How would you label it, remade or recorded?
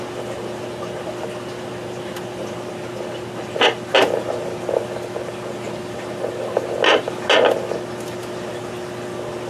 recorded